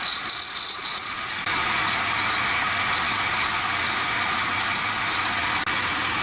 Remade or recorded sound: recorded